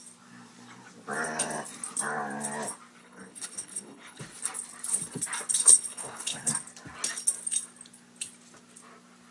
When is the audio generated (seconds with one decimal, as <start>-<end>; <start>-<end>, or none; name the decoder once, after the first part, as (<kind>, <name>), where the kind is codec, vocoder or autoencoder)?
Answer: 3.0-4.2 (codec, HILCodec); 5.6-6.5